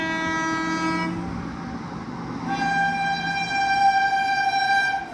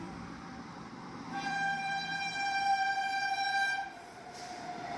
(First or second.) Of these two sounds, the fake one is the second